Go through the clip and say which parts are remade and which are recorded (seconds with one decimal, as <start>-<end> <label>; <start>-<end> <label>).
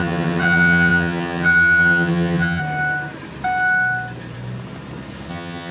0.0-2.6 remade; 2.6-5.3 recorded; 5.3-5.7 remade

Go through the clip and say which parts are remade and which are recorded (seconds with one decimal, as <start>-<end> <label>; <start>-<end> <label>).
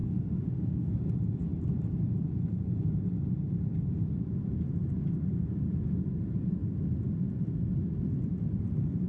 0.0-0.9 remade; 0.9-9.1 recorded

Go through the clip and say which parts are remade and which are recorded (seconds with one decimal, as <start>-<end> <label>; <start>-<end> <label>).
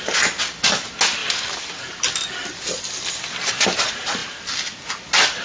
0.0-1.2 recorded; 1.2-3.3 remade; 3.3-4.2 recorded; 4.2-4.8 remade; 4.8-5.4 recorded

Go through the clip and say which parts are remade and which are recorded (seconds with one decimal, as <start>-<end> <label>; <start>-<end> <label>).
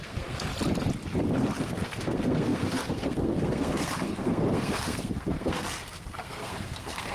0.0-0.5 remade; 0.5-1.6 recorded; 1.6-7.1 remade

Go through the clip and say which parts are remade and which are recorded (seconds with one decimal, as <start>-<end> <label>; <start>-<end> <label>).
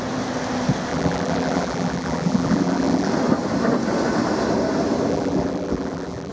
0.0-0.9 recorded; 0.9-3.1 remade; 3.1-5.1 recorded; 5.1-6.3 remade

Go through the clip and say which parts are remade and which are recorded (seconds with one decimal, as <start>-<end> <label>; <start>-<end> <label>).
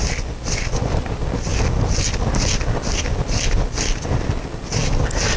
0.0-5.4 recorded